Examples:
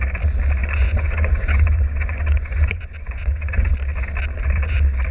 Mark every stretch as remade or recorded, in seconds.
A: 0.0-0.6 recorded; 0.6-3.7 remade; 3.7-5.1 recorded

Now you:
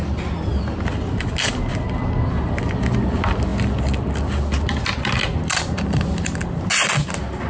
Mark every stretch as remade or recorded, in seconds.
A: 0.0-7.5 recorded